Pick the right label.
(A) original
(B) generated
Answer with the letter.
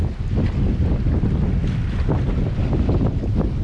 A